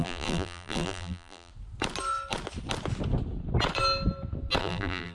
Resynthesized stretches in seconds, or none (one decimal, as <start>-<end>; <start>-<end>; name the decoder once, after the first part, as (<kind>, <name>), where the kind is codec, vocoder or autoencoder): 0.0-1.5 (vocoder, BigVGAN v2); 4.6-5.1